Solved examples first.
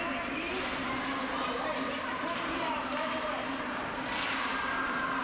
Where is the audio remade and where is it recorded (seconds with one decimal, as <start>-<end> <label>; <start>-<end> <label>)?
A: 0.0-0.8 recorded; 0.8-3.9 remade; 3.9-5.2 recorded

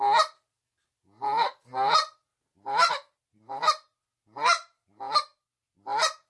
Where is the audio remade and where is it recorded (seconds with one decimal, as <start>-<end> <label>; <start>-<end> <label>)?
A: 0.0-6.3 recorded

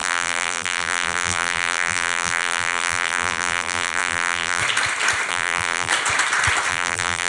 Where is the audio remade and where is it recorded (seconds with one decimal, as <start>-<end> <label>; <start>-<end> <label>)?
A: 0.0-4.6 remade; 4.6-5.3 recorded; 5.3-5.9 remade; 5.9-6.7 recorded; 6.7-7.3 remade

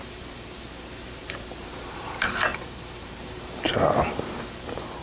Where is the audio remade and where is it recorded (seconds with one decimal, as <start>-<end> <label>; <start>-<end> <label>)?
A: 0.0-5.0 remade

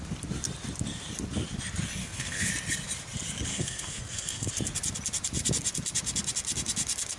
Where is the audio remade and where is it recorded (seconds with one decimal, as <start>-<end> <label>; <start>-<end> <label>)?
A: 0.0-2.0 recorded; 2.0-2.5 remade; 2.5-3.5 recorded; 3.5-4.5 remade; 4.5-7.2 recorded

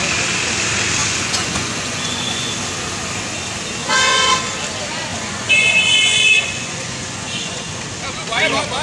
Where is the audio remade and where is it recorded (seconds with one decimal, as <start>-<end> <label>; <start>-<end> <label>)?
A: 0.0-1.0 recorded; 1.0-2.5 remade; 2.5-3.8 recorded; 3.8-4.4 remade; 4.4-5.1 recorded; 5.1-7.8 remade; 7.8-8.8 recorded

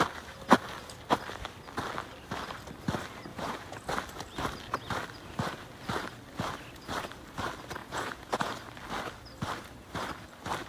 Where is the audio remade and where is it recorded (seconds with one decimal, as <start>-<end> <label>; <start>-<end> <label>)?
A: 0.0-3.3 recorded; 3.3-3.9 remade; 3.9-7.8 recorded; 7.8-8.5 remade; 8.5-10.7 recorded

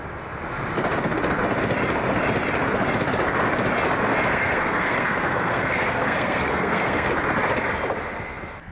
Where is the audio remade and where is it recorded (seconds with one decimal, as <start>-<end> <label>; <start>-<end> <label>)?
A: 0.0-4.3 recorded; 4.3-7.1 remade; 7.1-8.7 recorded